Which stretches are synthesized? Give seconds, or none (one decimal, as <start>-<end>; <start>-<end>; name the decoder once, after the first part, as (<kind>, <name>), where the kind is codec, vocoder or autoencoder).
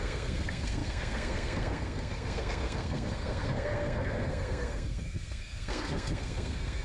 0.0-6.8 (codec, SNAC)